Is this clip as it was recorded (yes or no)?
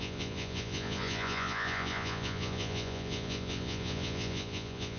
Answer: no